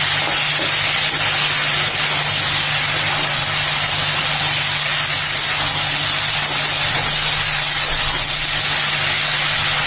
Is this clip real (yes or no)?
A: yes